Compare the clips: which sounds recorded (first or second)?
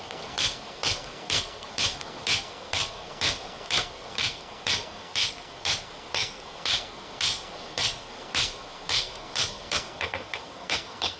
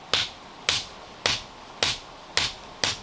second